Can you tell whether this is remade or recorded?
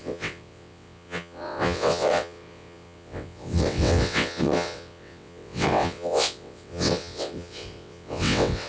remade